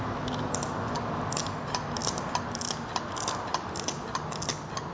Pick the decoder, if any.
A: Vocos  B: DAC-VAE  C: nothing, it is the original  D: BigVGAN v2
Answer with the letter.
C